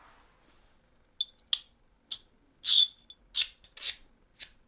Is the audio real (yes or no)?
yes